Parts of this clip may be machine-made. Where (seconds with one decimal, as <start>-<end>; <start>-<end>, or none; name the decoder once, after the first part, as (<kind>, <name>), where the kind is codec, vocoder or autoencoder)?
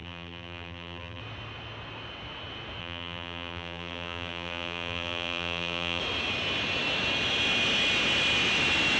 0.0-1.2 (vocoder, BigVGAN v2); 2.8-6.0